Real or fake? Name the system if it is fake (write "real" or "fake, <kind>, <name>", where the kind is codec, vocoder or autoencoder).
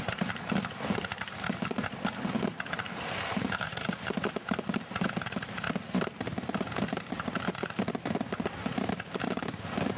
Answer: fake, vocoder, BigVGAN v2